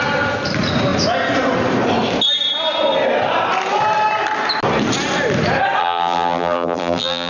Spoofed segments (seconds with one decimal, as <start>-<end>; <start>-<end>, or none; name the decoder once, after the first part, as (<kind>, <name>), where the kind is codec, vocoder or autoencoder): 5.8-7.3 (vocoder, BigVGAN v2)